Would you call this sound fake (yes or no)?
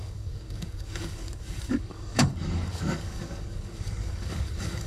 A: yes